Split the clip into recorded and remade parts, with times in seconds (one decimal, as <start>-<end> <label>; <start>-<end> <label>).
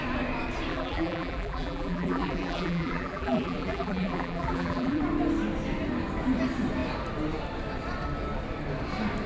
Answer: 0.0-0.7 recorded; 0.7-5.0 remade; 5.0-9.3 recorded